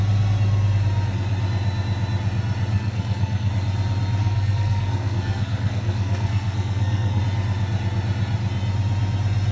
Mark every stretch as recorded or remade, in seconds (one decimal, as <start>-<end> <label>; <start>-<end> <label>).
0.0-2.7 recorded; 2.7-3.5 remade; 3.5-4.2 recorded; 4.2-7.2 remade; 7.2-9.5 recorded